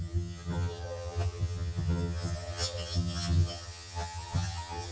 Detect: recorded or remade remade